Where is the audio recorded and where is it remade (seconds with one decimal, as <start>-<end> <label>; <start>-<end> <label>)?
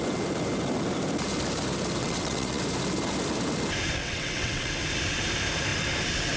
0.0-2.0 recorded; 2.0-2.6 remade; 2.6-4.0 recorded; 4.0-4.7 remade; 4.7-6.4 recorded